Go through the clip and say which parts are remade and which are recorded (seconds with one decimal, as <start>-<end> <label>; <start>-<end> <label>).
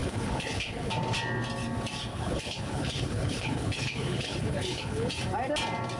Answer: 0.0-0.9 remade; 0.9-2.1 recorded; 2.1-5.1 remade; 5.1-6.0 recorded